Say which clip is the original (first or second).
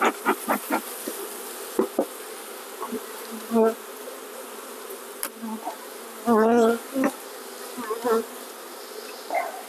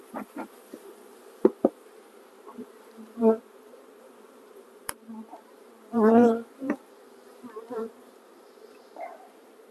first